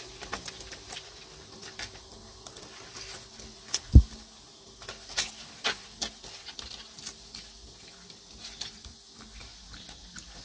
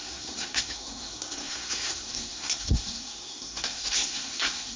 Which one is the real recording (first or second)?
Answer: first